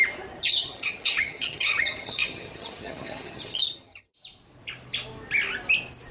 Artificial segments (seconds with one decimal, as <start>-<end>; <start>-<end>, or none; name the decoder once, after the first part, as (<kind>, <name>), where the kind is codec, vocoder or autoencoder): 0.4-4.1 (vocoder, HiFi-GAN)